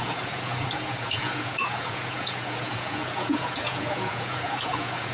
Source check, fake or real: fake